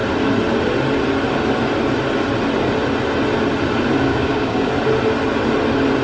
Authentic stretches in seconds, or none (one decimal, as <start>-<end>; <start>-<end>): 0.0-4.1; 4.7-6.0